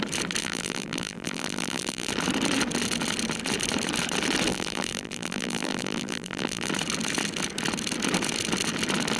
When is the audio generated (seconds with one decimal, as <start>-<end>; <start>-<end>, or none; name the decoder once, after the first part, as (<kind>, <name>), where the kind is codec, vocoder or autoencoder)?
0.4-2.1 (vocoder, BigVGAN v2); 4.5-6.7